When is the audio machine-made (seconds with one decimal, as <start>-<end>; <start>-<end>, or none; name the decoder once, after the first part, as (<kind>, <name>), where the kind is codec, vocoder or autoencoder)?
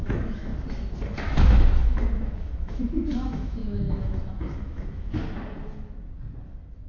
0.0-0.5 (autoencoder, DAC-VAE); 1.1-5.2